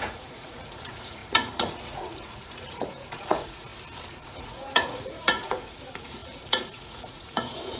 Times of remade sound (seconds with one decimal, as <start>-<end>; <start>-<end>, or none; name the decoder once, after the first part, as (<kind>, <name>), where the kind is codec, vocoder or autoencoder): 0.0-3.7 (vocoder, Vocos); 4.2-7.8